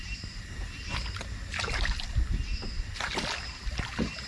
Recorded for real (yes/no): yes